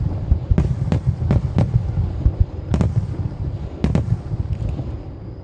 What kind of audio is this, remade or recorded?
recorded